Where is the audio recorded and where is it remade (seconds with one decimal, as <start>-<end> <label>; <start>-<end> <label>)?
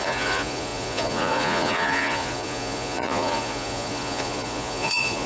0.0-5.3 remade